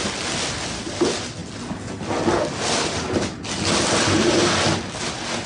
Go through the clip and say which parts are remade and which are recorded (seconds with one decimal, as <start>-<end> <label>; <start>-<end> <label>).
0.0-5.5 recorded